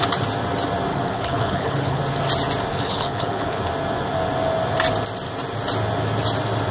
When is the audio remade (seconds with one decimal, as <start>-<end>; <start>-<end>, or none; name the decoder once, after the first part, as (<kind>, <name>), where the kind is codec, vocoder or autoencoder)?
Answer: 0.9-2.0 (codec, HILCodec); 2.7-3.6